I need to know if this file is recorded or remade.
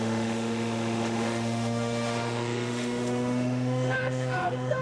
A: remade